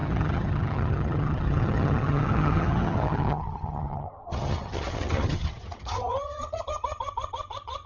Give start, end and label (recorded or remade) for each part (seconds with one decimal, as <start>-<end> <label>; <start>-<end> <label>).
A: 0.0-7.9 remade